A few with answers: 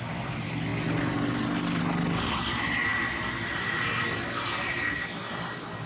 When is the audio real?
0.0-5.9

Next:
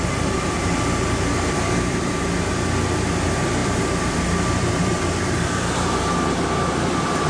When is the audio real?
none

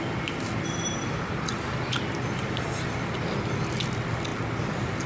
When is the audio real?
0.0-5.1

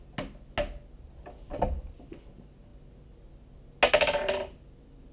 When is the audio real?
0.0-5.1

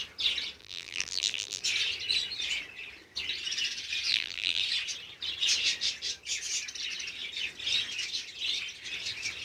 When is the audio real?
0.0-0.6; 1.6-4.1; 4.6-9.4

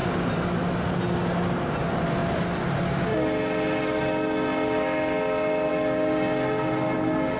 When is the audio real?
0.0-7.4

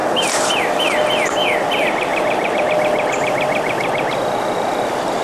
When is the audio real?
0.6-2.1; 2.7-5.2